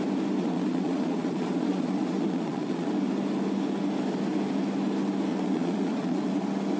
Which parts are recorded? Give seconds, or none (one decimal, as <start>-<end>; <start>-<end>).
0.0-0.4; 2.9-5.3; 6.3-6.8